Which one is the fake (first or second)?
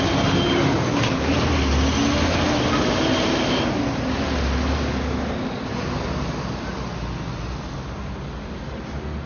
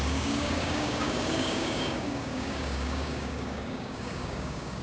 second